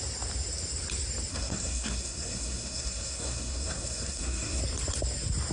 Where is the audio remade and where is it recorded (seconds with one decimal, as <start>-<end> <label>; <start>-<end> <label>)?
0.0-1.3 recorded; 1.3-4.6 remade; 4.6-5.5 recorded